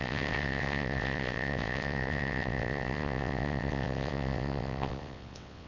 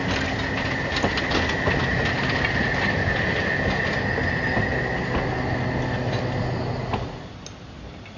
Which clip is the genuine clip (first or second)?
second